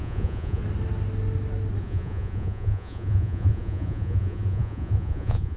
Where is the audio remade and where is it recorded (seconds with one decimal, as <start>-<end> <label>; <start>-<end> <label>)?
0.0-0.6 remade; 0.6-1.8 recorded; 1.8-5.6 remade